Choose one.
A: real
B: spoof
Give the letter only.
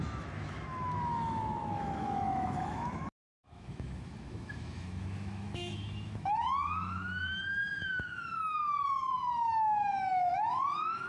B